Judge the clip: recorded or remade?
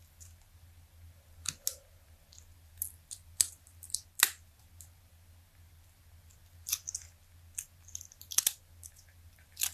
recorded